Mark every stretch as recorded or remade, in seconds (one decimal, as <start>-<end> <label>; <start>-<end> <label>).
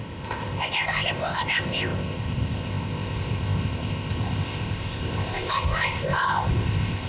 0.0-7.1 remade